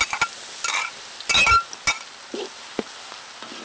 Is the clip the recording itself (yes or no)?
yes